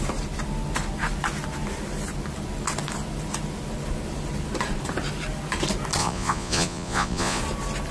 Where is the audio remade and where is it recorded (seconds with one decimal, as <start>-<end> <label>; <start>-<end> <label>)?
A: 0.0-6.0 recorded; 6.0-7.4 remade; 7.4-7.9 recorded